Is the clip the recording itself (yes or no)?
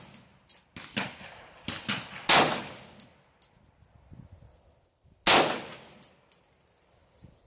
yes